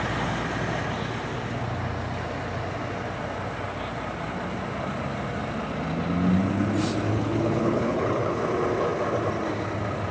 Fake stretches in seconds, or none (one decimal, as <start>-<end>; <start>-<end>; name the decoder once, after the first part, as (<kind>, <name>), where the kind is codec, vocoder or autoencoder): 7.1-8.4 (codec, HILCodec)